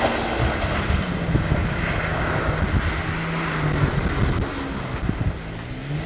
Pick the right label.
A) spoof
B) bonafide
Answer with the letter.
B